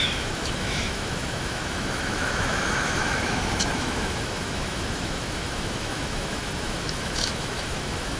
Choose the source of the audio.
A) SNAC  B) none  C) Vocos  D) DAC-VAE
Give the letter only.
D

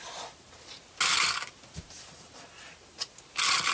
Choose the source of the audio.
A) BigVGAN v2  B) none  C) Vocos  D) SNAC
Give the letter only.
B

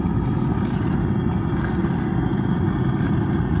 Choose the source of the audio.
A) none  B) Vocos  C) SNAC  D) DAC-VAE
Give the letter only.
A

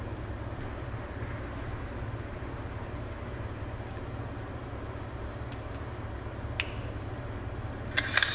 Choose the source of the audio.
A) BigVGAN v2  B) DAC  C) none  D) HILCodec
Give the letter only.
C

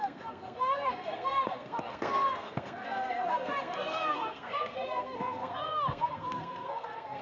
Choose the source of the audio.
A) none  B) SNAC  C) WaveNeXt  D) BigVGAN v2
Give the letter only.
B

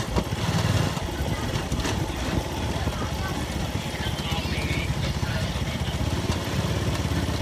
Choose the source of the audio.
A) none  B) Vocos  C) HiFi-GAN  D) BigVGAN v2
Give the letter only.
A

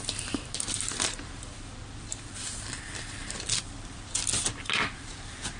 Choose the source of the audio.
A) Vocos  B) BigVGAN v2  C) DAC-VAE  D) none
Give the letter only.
B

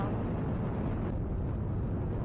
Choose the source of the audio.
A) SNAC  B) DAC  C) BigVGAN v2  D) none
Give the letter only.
D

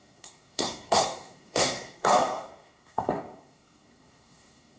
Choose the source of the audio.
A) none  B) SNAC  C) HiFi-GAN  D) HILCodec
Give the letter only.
B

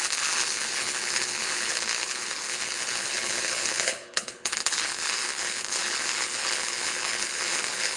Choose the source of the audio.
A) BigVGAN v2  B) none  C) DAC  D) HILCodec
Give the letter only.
D